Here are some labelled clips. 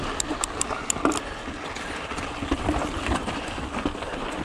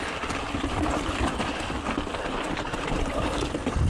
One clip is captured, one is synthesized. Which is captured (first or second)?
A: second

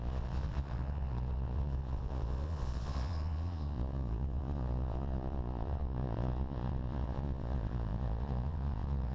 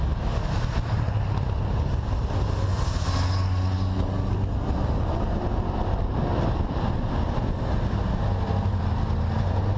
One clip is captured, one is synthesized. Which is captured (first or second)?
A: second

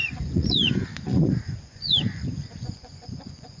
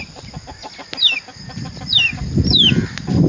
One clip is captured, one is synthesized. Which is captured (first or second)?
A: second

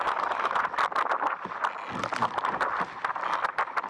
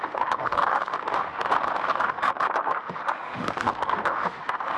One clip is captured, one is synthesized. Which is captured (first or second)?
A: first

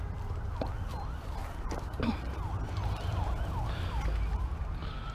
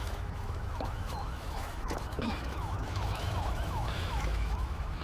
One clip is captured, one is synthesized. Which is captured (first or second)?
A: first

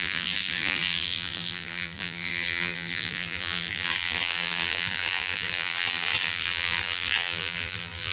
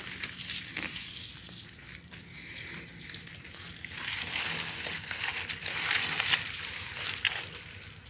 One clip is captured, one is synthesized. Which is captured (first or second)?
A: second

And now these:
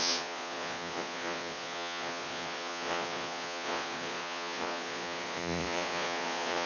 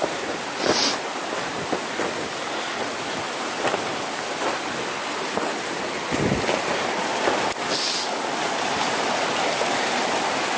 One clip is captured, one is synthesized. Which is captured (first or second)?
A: second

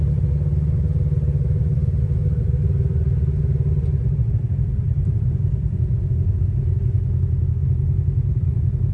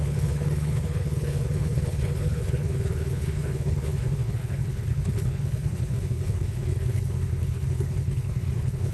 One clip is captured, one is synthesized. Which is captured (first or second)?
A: first